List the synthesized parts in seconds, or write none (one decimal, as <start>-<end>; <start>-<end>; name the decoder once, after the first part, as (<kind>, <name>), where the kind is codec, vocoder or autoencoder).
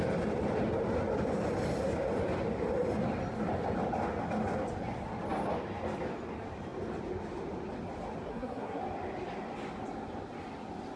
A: 8.3-8.8 (codec, SNAC)